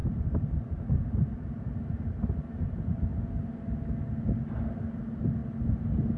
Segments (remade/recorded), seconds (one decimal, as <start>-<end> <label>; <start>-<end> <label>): 0.0-6.2 recorded